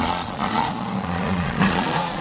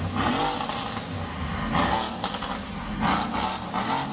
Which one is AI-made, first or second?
first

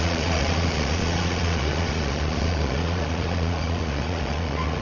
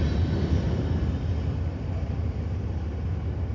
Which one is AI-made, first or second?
first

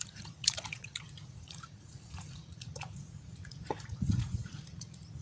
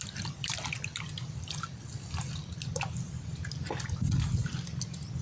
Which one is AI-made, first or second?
first